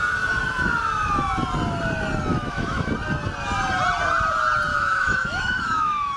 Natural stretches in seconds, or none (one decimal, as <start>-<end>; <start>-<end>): 0.0-2.3; 2.9-4.7